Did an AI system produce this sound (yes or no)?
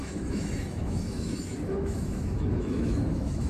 yes